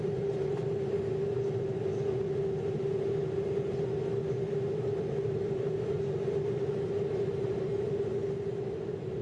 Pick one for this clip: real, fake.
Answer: real